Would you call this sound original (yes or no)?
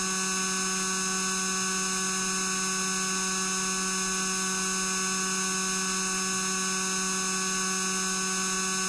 yes